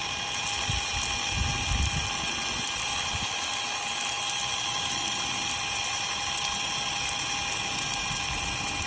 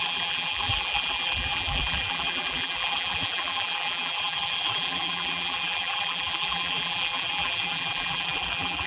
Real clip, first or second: first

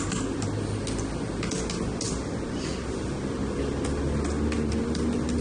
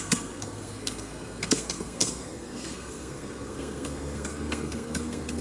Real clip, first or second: first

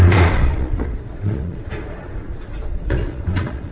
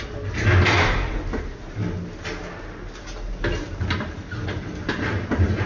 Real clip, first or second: second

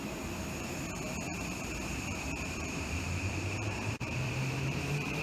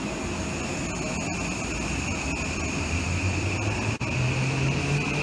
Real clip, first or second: second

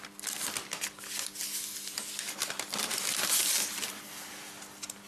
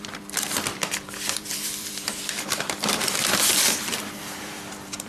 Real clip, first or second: first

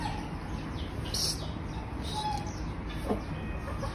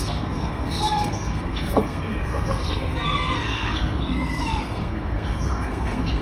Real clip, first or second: first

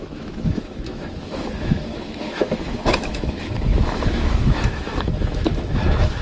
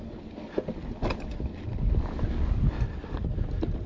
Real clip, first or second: second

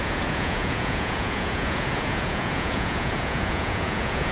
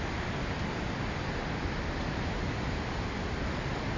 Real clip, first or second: second